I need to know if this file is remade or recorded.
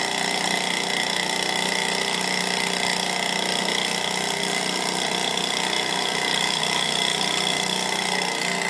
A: recorded